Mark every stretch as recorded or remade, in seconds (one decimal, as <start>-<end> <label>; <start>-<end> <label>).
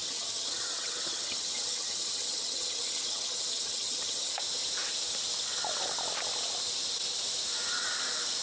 0.0-4.3 remade; 4.3-8.4 recorded